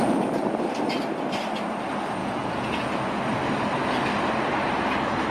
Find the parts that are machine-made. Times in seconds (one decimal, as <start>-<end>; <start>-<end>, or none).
2.2-3.2